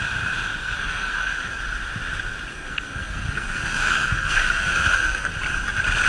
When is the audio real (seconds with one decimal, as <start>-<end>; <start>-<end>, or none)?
0.0-0.6; 1.6-2.5; 5.3-6.1